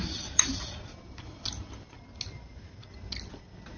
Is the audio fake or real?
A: real